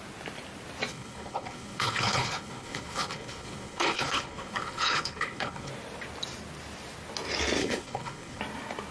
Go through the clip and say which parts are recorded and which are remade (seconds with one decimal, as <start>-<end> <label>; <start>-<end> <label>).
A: 0.0-0.9 recorded; 0.9-5.7 remade; 5.7-7.6 recorded; 7.6-8.4 remade; 8.4-8.9 recorded